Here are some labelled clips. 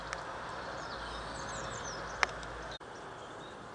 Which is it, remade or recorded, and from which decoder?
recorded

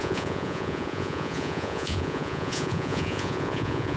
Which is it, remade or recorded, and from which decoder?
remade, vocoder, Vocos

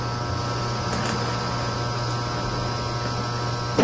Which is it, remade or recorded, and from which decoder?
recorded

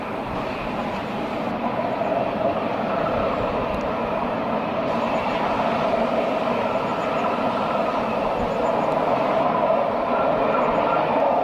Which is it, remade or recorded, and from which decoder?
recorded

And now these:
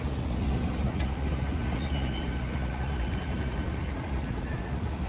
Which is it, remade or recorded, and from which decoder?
remade, vocoder, Vocos